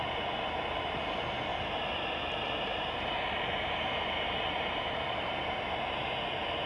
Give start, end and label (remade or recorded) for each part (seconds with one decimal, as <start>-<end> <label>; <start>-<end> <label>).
0.0-1.5 remade; 1.5-2.2 recorded; 2.2-6.7 remade

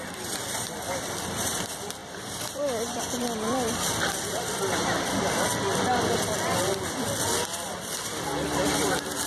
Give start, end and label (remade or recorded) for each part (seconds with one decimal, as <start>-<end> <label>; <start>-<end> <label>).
0.0-4.8 remade; 4.8-7.7 recorded; 7.7-9.3 remade

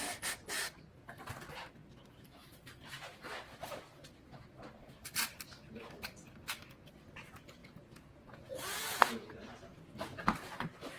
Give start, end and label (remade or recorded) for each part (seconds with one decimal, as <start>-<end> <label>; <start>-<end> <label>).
0.0-7.6 recorded; 7.6-9.3 remade; 9.3-11.0 recorded

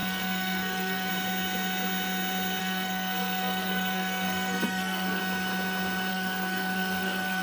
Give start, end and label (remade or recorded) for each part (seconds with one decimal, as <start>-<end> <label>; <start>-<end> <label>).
0.0-1.1 remade; 1.1-2.6 recorded; 2.6-5.2 remade; 5.2-6.1 recorded; 6.1-7.4 remade

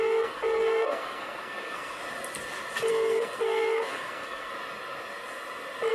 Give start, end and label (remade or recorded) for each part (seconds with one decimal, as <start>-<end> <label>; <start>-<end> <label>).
0.0-2.0 remade; 2.0-2.9 recorded; 2.9-4.5 remade; 4.5-5.9 recorded

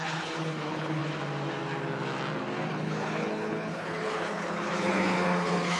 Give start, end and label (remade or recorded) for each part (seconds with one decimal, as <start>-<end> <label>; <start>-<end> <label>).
0.0-1.0 remade; 1.0-2.7 recorded; 2.7-5.8 remade

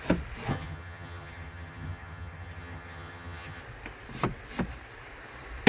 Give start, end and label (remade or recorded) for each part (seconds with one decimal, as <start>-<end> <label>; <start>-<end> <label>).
0.0-0.5 recorded; 0.5-3.6 remade; 3.6-5.7 recorded